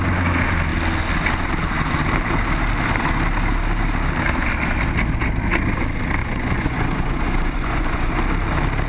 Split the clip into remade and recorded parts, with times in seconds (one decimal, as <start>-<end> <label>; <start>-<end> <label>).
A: 0.0-6.2 recorded; 6.2-8.1 remade; 8.1-8.9 recorded